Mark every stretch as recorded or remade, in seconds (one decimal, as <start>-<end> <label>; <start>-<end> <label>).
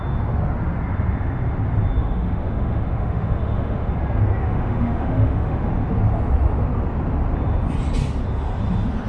0.0-2.0 recorded; 2.0-3.9 remade; 3.9-4.4 recorded; 4.4-5.7 remade; 5.7-9.1 recorded